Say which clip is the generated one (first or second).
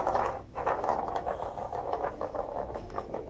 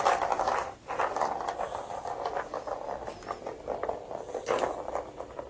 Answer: first